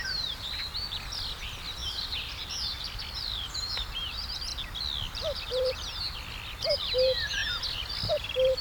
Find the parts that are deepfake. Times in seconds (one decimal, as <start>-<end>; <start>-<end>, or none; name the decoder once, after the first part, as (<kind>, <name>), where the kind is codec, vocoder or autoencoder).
0.0-4.5 (vocoder, BigVGAN v2); 5.2-7.4; 8.1-8.6